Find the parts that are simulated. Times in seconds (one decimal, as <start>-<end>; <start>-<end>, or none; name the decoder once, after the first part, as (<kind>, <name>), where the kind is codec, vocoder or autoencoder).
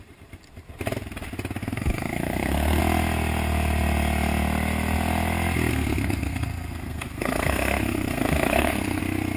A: 1.6-2.8 (codec, SNAC); 5.7-9.0